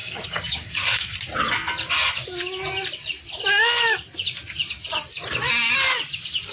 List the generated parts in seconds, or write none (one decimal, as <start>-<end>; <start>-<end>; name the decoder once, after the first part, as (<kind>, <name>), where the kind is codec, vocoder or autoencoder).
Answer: 0.0-1.2 (codec, DAC)